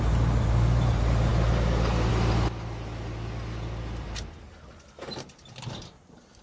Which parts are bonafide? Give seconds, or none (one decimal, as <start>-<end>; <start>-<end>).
0.0-6.4